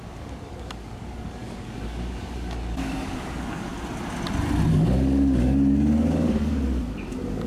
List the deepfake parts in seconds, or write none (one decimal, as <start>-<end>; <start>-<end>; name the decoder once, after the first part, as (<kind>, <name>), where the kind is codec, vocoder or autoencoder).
0.0-3.7 (codec, DAC); 4.7-7.5